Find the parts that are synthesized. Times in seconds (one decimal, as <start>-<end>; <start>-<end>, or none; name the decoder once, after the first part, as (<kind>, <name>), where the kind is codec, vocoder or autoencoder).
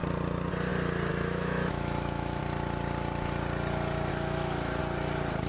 1.1-2.4 (autoencoder, DAC-VAE); 4.1-4.8